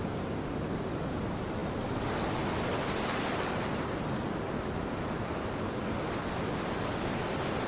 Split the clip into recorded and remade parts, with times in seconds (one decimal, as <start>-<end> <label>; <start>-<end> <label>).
0.0-7.7 recorded